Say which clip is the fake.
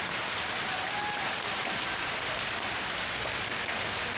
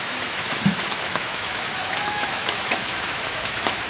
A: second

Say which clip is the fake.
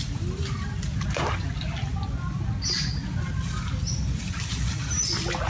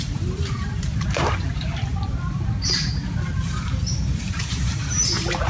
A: second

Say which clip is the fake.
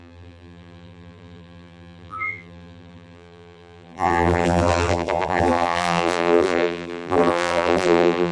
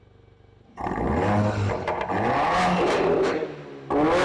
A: first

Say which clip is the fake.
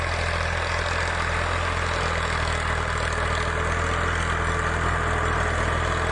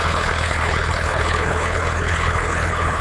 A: second